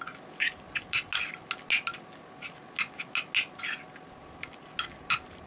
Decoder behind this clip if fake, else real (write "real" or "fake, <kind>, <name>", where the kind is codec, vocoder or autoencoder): real